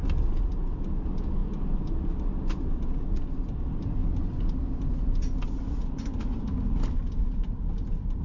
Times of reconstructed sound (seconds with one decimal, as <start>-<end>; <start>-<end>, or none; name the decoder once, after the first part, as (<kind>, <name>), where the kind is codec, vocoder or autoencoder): 4.0-6.9 (vocoder, BigVGAN v2)